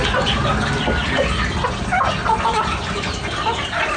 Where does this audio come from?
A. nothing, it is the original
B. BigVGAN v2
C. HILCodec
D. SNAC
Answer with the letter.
A